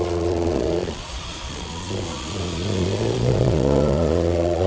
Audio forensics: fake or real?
fake